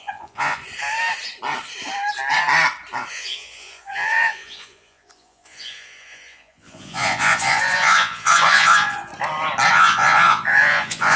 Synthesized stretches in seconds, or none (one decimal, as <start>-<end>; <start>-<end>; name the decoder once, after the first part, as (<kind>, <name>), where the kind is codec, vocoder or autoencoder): 0.0-0.6 (vocoder, Vocos); 3.1-9.1; 9.7-11.2